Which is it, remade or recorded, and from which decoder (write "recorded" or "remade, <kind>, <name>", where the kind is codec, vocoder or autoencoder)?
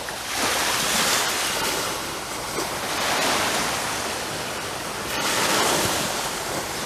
recorded